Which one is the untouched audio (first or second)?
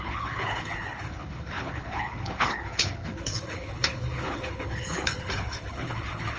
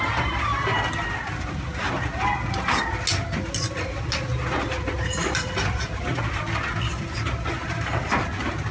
second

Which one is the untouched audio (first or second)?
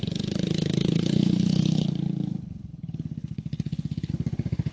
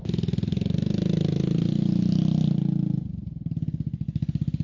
second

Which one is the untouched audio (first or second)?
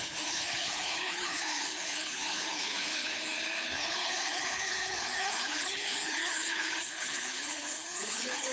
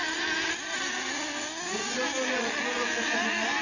second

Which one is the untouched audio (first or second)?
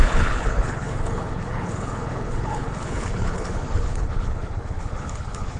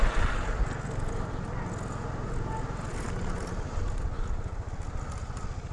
second